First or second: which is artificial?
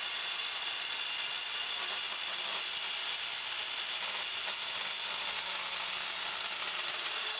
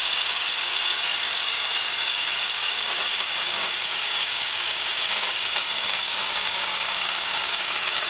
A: second